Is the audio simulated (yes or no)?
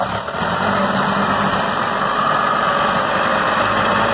no